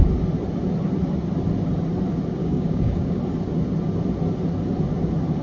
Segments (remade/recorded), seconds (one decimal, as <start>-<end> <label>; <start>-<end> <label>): 0.0-2.4 recorded; 2.4-3.2 remade; 3.2-5.4 recorded